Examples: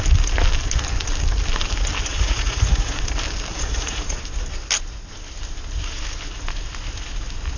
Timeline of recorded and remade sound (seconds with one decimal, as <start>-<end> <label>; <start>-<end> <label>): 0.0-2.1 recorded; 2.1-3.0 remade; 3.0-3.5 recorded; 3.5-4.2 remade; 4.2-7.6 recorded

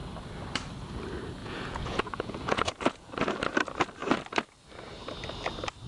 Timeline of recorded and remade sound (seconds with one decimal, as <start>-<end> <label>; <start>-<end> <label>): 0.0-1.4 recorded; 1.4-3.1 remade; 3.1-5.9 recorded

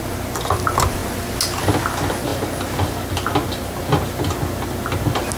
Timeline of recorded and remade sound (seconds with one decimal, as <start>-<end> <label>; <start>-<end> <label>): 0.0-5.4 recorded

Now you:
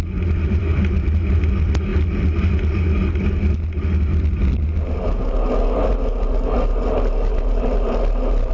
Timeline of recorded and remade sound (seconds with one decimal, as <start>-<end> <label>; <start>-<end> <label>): 0.0-8.5 recorded

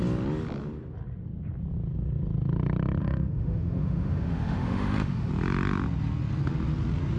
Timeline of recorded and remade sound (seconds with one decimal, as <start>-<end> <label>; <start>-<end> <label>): 0.0-3.0 recorded; 3.0-5.3 remade; 5.3-7.2 recorded

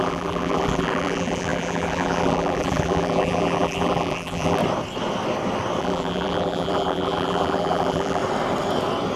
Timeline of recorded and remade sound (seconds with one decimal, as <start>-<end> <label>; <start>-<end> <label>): 0.0-4.6 remade; 4.6-5.8 recorded; 5.8-8.2 remade; 8.2-9.2 recorded

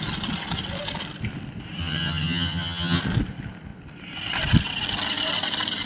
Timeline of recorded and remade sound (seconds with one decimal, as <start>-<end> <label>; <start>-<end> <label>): 0.0-1.8 recorded; 1.8-3.0 remade; 3.0-5.9 recorded